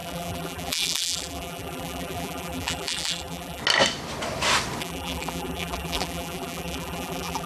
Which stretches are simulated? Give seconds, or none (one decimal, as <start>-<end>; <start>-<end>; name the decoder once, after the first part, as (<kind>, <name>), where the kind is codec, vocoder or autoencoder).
0.0-3.6 (vocoder, BigVGAN v2); 4.8-7.5